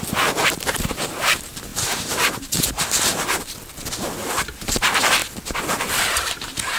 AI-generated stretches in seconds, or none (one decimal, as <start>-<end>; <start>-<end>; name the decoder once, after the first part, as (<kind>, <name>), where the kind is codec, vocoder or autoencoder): 0.0-3.1 (vocoder, BigVGAN v2); 4.6-5.2; 5.9-6.8